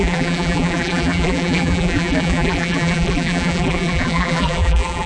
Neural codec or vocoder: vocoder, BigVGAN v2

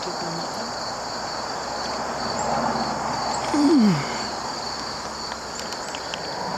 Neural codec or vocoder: none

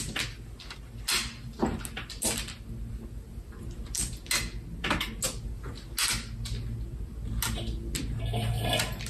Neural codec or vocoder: none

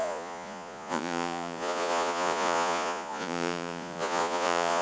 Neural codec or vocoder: vocoder, Vocos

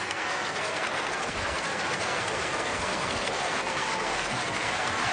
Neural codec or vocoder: codec, SNAC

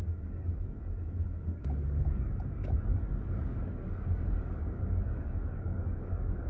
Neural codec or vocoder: codec, DAC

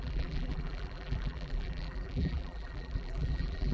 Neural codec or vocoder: vocoder, BigVGAN v2